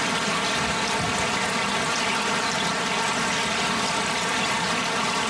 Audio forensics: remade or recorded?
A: recorded